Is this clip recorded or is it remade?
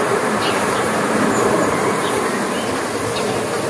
remade